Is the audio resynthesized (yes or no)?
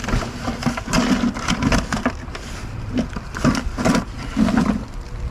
no